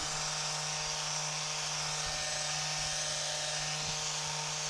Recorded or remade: recorded